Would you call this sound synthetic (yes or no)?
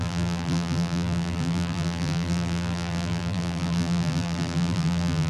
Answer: yes